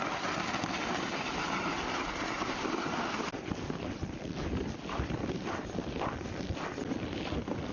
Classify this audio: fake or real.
real